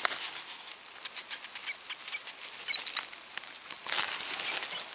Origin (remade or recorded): recorded